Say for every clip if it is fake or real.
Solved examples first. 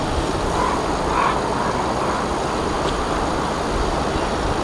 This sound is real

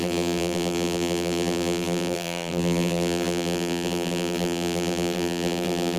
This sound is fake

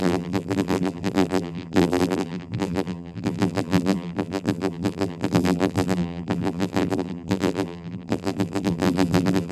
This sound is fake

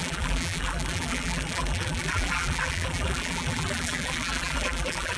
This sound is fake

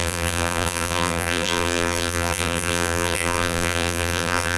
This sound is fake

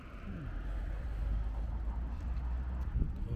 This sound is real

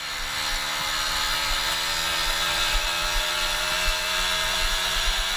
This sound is real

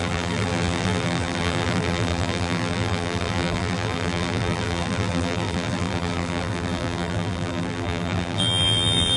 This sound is fake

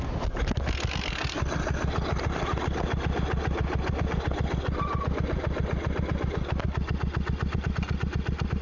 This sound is real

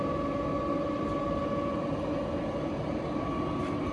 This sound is real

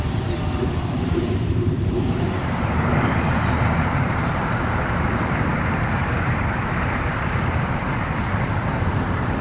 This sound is fake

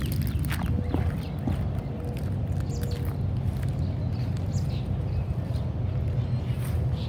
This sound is real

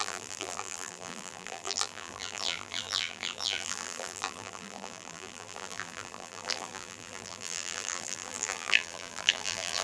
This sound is fake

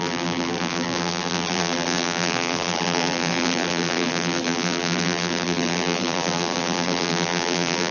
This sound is fake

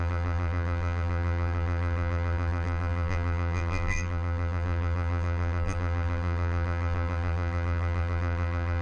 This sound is fake